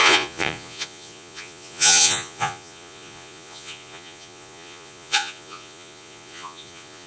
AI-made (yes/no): yes